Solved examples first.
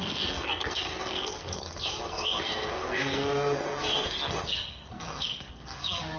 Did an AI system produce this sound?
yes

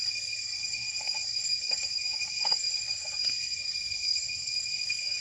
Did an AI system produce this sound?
yes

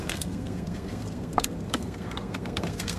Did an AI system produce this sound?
yes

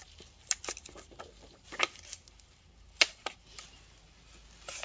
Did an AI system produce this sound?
no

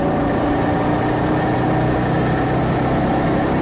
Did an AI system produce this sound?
no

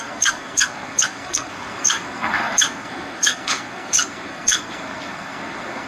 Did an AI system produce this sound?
yes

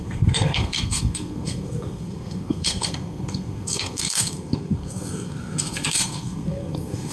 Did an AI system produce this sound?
yes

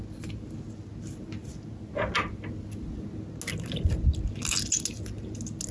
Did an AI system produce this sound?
no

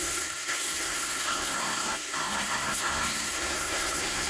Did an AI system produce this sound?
yes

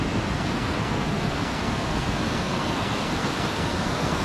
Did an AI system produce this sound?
yes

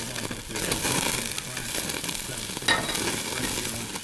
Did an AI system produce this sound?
no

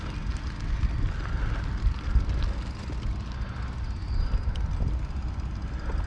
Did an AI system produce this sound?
no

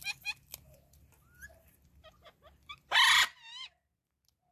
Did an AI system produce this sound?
no